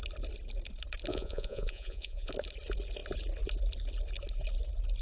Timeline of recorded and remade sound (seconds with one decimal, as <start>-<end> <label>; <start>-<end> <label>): 0.0-1.1 recorded; 1.1-2.3 remade; 2.3-5.0 recorded